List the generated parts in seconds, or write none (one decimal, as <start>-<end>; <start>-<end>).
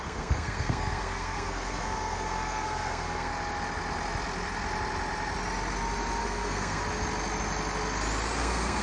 0.0-3.3; 6.2-6.8; 8.4-8.8